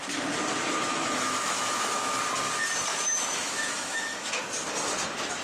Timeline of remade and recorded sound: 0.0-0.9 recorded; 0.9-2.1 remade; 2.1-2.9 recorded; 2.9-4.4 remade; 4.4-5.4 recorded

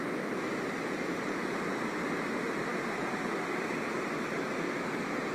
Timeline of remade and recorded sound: 0.0-5.3 recorded